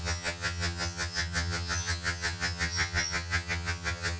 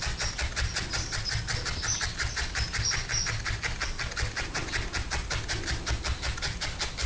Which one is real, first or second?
second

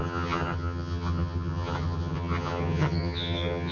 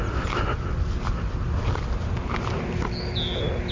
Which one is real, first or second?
second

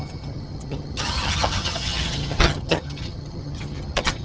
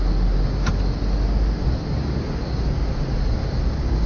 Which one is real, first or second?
second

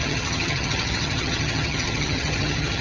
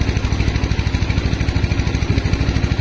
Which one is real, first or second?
second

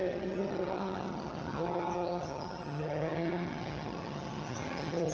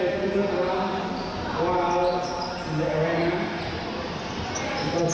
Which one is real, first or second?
second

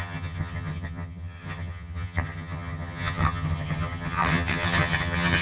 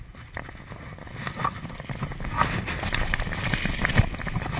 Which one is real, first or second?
second